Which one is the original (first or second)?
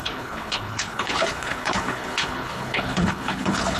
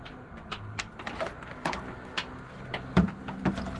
second